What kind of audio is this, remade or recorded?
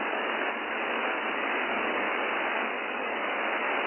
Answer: remade